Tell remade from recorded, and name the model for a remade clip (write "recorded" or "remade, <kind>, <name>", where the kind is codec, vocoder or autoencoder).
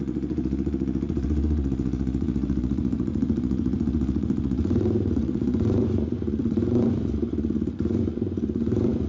remade, vocoder, Vocos